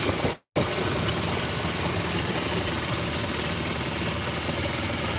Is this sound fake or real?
real